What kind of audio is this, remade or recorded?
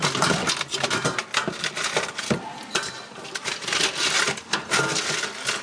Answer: recorded